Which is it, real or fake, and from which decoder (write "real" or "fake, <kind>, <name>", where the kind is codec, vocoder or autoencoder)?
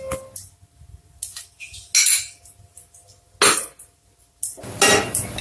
real